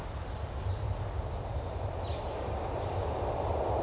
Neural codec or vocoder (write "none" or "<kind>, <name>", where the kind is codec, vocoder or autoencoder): none